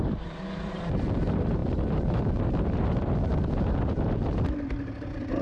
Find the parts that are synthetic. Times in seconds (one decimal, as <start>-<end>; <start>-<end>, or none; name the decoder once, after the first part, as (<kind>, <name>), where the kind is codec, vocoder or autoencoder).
none